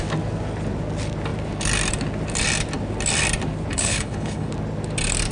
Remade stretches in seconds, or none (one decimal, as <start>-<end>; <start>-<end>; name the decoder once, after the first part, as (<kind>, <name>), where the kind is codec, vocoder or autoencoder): 3.7-4.5 (codec, HILCodec)